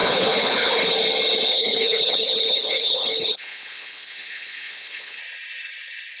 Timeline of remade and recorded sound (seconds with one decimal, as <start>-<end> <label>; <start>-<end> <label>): 0.0-0.9 remade; 0.9-1.5 recorded; 1.5-5.2 remade; 5.2-6.2 recorded